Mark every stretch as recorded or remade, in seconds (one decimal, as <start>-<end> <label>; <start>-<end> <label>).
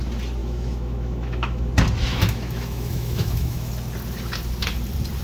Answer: 0.0-0.4 recorded; 0.4-1.7 remade; 1.7-2.1 recorded; 2.1-3.7 remade; 3.7-5.2 recorded